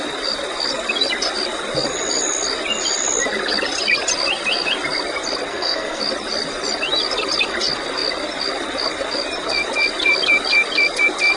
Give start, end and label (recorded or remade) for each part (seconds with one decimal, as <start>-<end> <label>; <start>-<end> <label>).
0.0-5.5 recorded; 5.5-6.0 remade; 6.0-11.4 recorded